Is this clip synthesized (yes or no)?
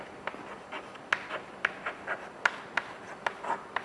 no